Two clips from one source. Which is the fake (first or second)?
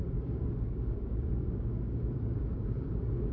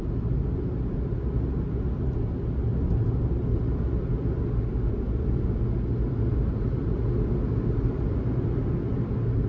first